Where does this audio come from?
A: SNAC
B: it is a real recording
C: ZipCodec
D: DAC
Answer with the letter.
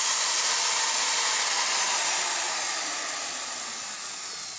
B